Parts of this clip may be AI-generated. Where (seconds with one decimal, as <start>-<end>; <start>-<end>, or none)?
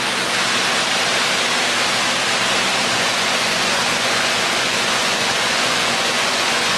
2.7-6.8